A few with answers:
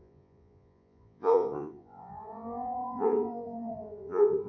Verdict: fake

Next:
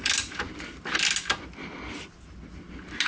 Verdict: real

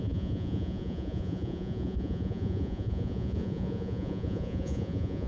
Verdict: fake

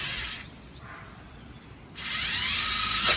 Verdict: real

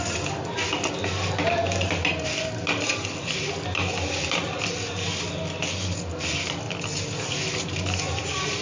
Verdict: real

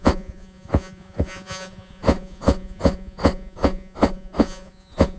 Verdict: fake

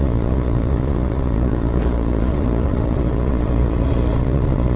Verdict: fake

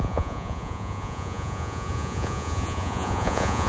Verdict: fake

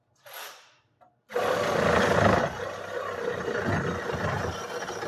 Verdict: real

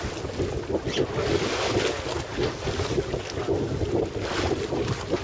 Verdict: real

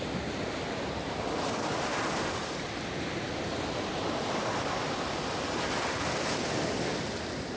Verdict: real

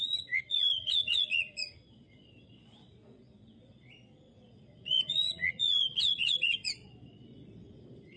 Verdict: fake